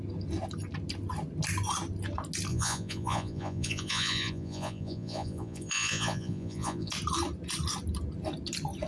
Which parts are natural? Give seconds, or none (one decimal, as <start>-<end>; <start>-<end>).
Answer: 0.0-2.5; 6.9-8.9